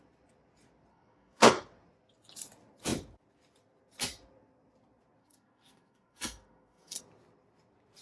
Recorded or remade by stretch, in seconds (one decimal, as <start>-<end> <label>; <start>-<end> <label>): 0.0-0.9 recorded; 0.9-1.5 remade; 1.5-5.2 recorded; 5.2-7.0 remade; 7.0-8.0 recorded